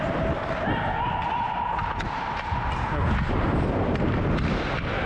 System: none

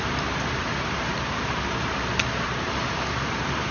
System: vocoder, BigVGAN v2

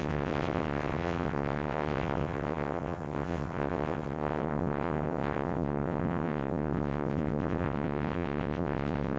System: vocoder, WaveNeXt